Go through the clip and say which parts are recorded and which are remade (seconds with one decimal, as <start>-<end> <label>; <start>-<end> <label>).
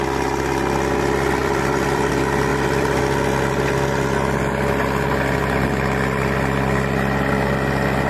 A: 0.0-1.4 recorded; 1.4-2.1 remade; 2.1-2.5 recorded; 2.5-3.0 remade; 3.0-8.1 recorded